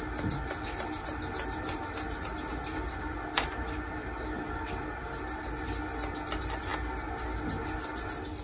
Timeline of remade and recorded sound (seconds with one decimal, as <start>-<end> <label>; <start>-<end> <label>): 0.0-8.4 recorded